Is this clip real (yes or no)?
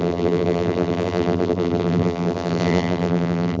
no